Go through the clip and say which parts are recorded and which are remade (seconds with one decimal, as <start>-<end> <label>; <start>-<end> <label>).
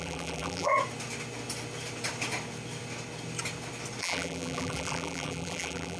0.0-0.7 remade; 0.7-4.0 recorded; 4.0-6.0 remade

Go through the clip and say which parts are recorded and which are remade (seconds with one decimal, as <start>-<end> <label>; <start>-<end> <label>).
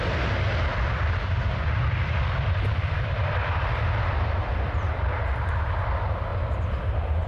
0.0-0.7 recorded; 0.7-5.1 remade; 5.1-6.3 recorded; 6.3-7.3 remade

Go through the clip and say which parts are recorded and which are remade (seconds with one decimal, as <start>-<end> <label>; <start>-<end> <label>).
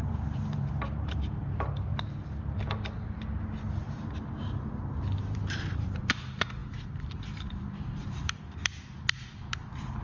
0.0-1.9 remade; 1.9-5.2 recorded; 5.2-10.0 remade